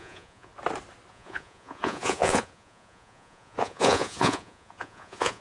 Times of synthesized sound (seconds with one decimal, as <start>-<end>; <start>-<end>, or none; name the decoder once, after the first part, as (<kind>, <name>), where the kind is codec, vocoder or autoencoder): 0.0-0.5 (vocoder, Vocos); 1.1-5.4